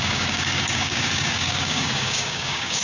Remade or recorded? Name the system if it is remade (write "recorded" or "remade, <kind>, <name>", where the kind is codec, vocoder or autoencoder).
remade, codec, DAC